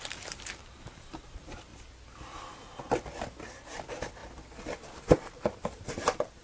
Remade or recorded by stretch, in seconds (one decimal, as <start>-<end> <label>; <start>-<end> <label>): 0.0-1.7 remade; 1.7-3.8 recorded; 3.8-4.2 remade; 4.2-4.9 recorded; 4.9-6.4 remade